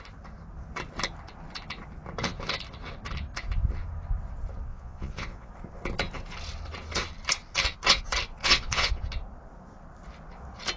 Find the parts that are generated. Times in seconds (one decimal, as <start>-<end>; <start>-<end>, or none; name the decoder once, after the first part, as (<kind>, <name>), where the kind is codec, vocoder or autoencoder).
4.7-5.5 (vocoder, Vocos); 8.4-9.0